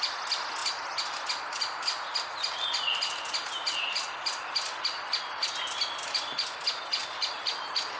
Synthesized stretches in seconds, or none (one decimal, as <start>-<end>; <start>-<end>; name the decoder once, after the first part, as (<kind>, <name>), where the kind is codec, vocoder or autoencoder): none